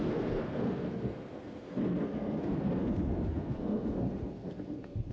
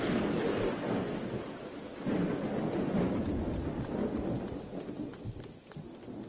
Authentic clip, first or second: second